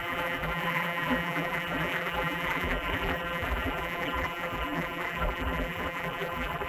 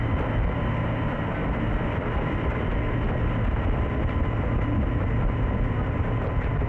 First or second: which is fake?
first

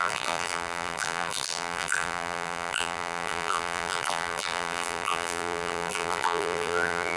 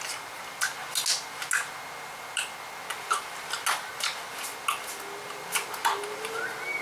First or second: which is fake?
first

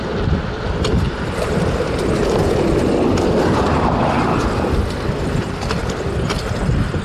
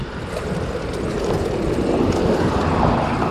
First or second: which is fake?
first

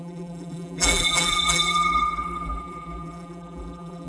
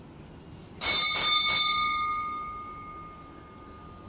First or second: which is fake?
first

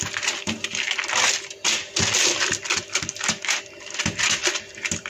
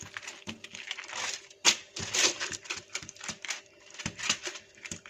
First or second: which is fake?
second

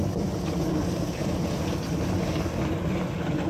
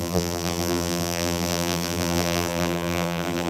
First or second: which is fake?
second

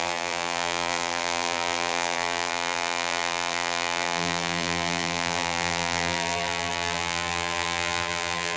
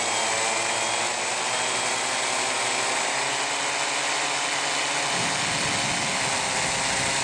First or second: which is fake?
first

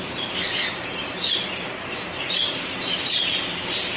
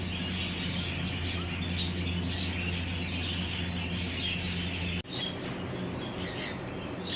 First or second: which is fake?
first